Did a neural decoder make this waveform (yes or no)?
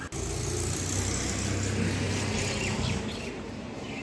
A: no